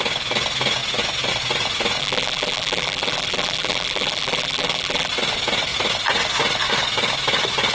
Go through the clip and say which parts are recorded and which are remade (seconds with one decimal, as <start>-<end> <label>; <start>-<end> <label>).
0.0-2.0 recorded; 2.0-5.1 remade; 5.1-7.7 recorded